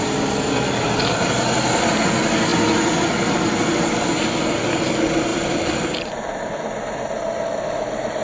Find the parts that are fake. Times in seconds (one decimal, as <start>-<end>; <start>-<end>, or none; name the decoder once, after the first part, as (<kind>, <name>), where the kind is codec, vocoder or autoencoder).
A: 5.3-6.5 (vocoder, BigVGAN v2)